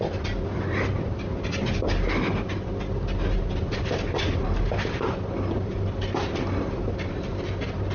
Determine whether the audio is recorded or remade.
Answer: recorded